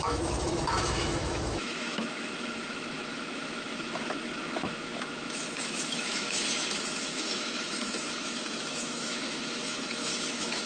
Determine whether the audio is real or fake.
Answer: fake